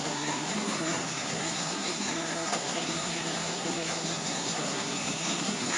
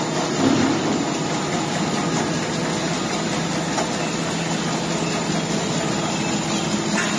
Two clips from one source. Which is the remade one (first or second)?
first